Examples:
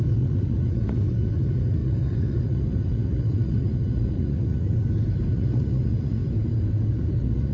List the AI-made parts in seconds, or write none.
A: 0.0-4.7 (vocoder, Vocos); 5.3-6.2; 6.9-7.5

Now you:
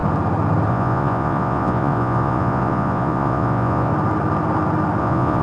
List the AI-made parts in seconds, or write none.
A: 0.7-3.9 (vocoder, Vocos); 5.0-5.4

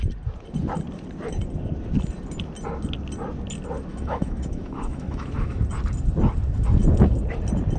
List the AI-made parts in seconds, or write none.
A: 3.9-5.6 (autoencoder, DAC-VAE)

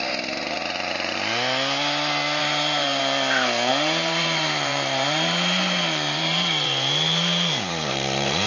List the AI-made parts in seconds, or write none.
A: 2.4-3.0 (vocoder, BigVGAN v2); 3.7-8.5